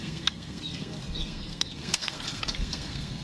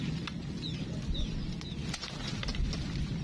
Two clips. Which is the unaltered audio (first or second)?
second